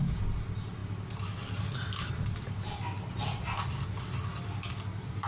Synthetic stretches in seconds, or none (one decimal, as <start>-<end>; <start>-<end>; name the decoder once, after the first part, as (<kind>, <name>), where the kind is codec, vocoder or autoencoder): none